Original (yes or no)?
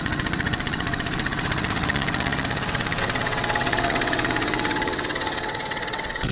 no